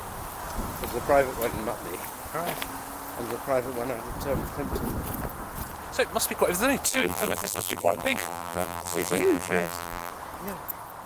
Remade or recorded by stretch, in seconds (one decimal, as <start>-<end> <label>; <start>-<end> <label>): 0.0-6.9 recorded; 6.9-10.1 remade; 10.1-11.1 recorded